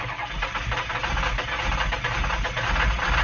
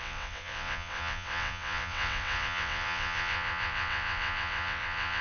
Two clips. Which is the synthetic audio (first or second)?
second